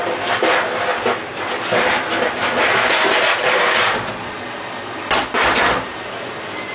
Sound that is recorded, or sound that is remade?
recorded